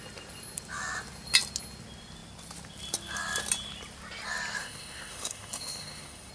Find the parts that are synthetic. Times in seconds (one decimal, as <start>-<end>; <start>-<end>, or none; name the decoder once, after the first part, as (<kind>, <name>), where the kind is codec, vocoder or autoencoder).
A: 4.6-6.3 (autoencoder, DAC-VAE)